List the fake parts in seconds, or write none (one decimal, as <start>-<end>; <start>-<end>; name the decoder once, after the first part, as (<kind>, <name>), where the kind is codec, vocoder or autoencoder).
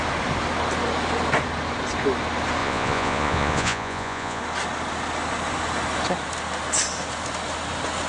2.6-4.4 (vocoder, Vocos)